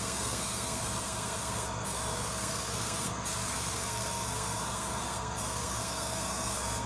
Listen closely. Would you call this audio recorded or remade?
remade